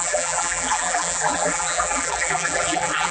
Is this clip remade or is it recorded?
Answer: remade